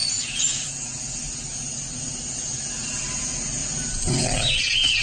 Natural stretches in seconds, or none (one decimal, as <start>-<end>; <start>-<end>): 0.0-5.0